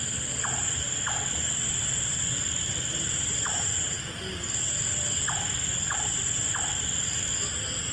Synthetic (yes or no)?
no